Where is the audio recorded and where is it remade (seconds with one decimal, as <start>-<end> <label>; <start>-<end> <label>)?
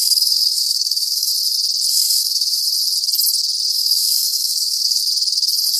0.0-1.3 remade; 1.3-1.9 recorded; 1.9-2.6 remade; 2.6-3.7 recorded; 3.7-5.0 remade; 5.0-5.8 recorded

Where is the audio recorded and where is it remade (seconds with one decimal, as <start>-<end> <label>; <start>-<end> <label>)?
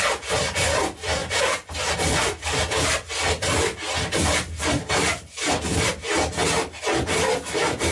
0.0-7.9 recorded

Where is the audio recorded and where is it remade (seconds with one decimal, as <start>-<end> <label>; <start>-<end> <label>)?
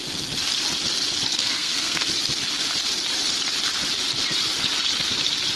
0.0-1.3 recorded; 1.3-2.1 remade; 2.1-5.6 recorded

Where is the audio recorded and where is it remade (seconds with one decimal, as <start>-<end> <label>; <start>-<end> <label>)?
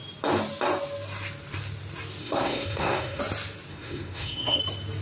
0.0-2.2 recorded; 2.2-3.2 remade; 3.2-3.7 recorded; 3.7-4.6 remade; 4.6-5.0 recorded